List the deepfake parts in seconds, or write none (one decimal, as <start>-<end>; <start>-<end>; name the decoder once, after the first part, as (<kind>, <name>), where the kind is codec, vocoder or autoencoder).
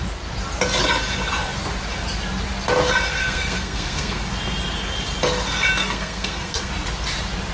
3.1-4.2 (codec, SNAC); 5.8-6.7